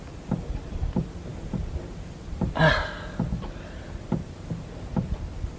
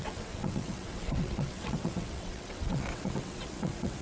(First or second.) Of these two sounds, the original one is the first